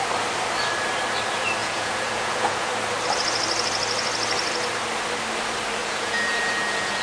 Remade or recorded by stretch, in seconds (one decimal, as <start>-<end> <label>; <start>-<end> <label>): 0.0-1.6 recorded; 1.6-2.7 remade; 2.7-5.8 recorded; 5.8-7.0 remade